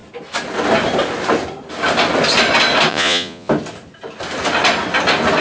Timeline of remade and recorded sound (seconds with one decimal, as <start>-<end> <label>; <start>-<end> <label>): 0.0-2.9 recorded; 2.9-3.5 remade; 3.5-5.4 recorded